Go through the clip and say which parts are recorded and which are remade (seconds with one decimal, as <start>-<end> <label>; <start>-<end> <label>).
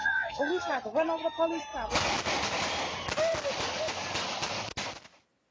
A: 0.0-0.6 remade; 0.6-5.5 recorded